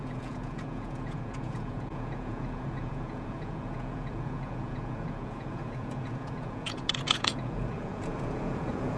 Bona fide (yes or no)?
no